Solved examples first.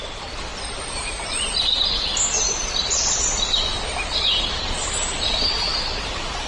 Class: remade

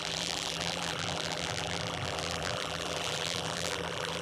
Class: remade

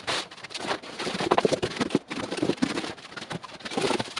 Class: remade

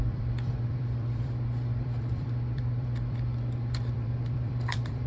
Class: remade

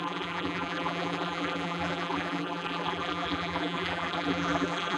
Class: remade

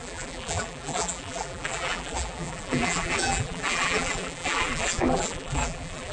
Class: remade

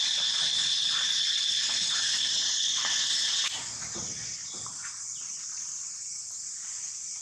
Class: recorded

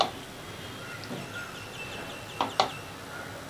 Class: recorded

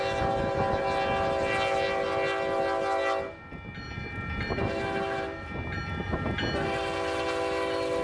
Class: recorded